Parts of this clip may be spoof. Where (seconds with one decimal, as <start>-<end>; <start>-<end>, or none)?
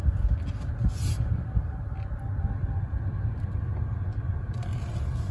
none